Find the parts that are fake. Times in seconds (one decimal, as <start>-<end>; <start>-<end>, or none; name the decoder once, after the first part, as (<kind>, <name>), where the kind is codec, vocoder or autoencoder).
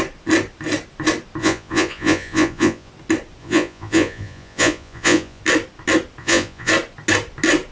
1.4-2.9 (vocoder, Vocos); 3.4-5.4; 6.2-6.7